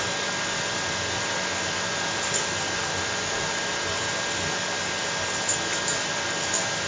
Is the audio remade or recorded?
remade